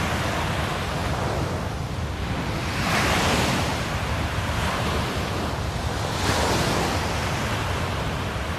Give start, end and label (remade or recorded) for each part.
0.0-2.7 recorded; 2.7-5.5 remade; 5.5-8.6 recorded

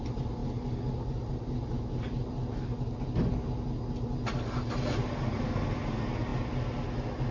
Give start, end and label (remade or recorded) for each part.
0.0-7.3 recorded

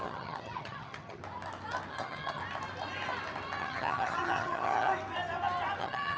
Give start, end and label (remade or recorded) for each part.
0.0-1.2 remade; 1.2-1.9 recorded; 1.9-2.4 remade; 2.4-3.6 recorded; 3.6-4.9 remade; 4.9-5.8 recorded; 5.8-6.2 remade

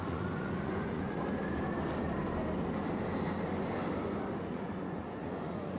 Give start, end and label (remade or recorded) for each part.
0.0-1.2 remade; 1.2-4.4 recorded; 4.4-5.8 remade